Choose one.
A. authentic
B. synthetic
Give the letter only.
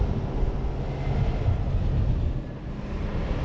A